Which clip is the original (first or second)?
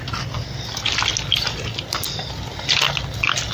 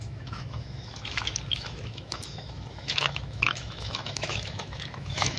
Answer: first